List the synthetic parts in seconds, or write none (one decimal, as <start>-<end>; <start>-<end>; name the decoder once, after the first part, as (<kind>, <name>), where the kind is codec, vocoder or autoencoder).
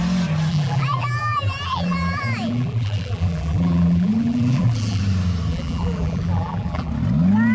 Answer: 0.5-5.0 (vocoder, BigVGAN v2); 5.5-6.9